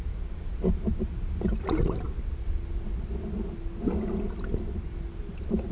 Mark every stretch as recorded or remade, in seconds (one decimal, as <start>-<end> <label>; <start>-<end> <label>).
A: 0.0-5.7 recorded